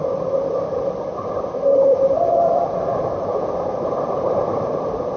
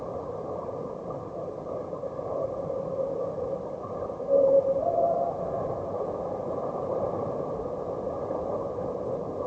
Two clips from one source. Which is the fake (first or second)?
first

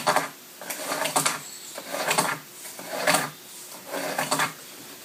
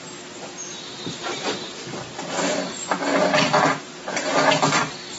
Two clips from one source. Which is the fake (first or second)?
first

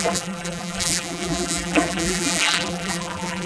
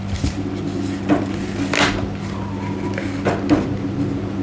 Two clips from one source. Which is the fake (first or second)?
first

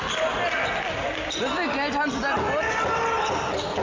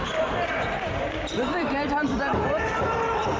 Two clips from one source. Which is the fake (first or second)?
second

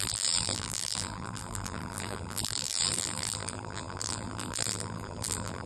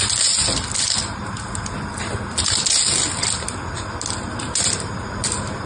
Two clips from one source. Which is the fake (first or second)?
first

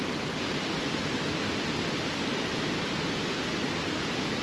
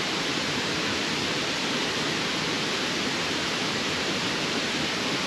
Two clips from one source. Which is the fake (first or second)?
second